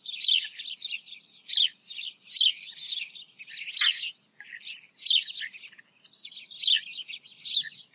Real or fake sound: real